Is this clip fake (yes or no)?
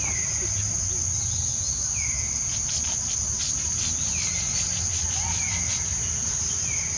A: no